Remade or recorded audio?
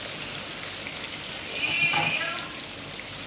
recorded